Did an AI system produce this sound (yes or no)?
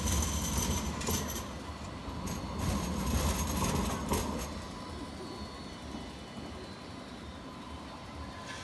no